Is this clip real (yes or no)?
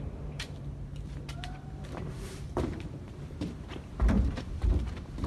no